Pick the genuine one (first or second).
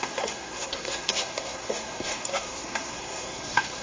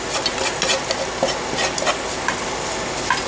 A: second